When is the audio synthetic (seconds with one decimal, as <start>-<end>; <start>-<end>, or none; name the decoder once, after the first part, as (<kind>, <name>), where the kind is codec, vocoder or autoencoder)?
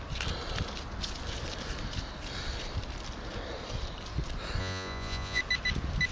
4.6-5.4 (vocoder, Vocos)